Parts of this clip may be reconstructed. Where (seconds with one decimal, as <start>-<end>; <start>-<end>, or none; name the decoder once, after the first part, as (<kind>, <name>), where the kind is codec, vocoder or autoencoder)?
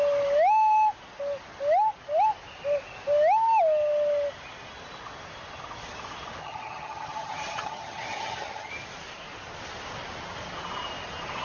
6.4-8.7 (vocoder, HiFi-GAN)